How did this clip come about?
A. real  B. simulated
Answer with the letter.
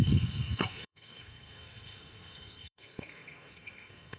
B